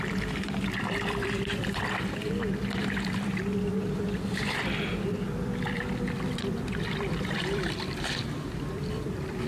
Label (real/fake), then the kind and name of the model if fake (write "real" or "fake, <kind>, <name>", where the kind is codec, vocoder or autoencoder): fake, vocoder, BigVGAN v2